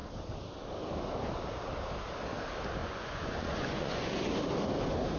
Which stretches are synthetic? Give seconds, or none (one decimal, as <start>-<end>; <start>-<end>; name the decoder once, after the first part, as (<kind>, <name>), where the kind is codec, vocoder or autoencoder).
2.8-4.3 (vocoder, Vocos)